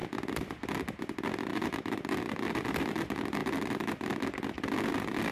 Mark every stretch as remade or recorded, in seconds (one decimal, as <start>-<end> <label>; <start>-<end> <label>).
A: 0.0-1.5 recorded; 1.5-2.0 remade; 2.0-3.4 recorded; 3.4-4.2 remade; 4.2-5.3 recorded